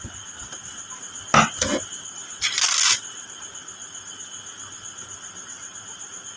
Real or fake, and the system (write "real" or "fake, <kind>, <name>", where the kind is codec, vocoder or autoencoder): real